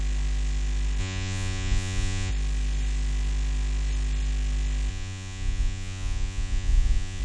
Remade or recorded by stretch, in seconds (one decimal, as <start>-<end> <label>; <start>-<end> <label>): 0.0-1.0 recorded; 1.0-2.3 remade; 2.3-4.9 recorded; 4.9-7.2 remade